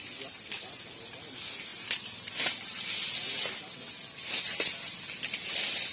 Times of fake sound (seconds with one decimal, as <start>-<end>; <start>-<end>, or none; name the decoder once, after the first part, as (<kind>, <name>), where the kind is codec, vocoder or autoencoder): none